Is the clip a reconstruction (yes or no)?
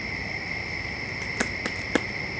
no